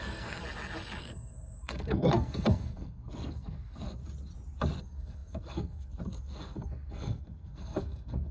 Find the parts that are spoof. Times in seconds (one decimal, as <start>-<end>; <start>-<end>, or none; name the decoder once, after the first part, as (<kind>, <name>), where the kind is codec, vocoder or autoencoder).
0.0-0.4 (codec, SNAC); 1.0-4.0; 4.8-8.3